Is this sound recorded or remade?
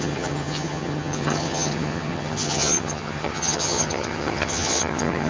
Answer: remade